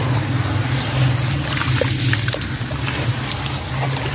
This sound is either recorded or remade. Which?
recorded